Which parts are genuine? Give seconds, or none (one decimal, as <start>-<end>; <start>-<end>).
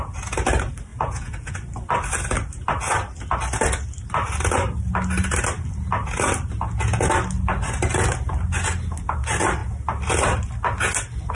0.0-0.9; 1.5-11.3